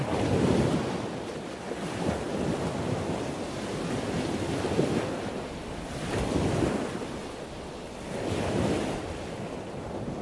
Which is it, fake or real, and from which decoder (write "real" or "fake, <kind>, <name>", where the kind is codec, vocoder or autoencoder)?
real